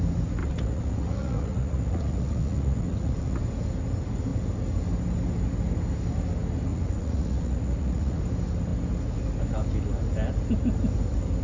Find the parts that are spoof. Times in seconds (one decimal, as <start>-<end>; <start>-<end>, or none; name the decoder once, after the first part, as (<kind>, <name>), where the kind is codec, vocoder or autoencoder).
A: 0.4-3.4 (vocoder, Vocos); 6.7-8.2